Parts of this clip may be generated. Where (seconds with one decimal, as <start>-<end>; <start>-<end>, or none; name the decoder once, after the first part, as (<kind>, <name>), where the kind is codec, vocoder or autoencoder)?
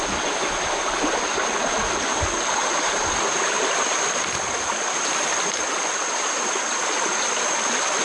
none